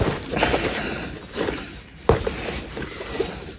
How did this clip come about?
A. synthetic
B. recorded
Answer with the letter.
A